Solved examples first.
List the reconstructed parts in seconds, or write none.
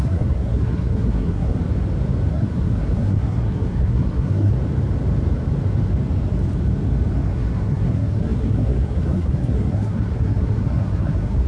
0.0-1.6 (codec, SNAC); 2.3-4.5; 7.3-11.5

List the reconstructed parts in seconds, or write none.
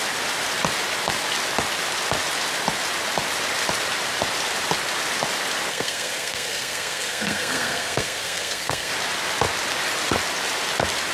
5.7-8.9 (codec, SNAC)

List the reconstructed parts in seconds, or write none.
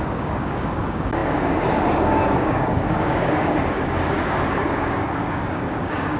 0.0-6.2 (codec, DAC)